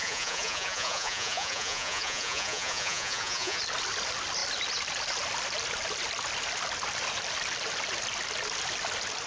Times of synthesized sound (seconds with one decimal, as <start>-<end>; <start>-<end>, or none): 0.0-3.6